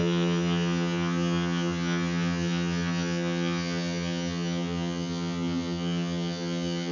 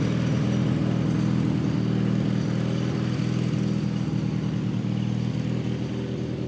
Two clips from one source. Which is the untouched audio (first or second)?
second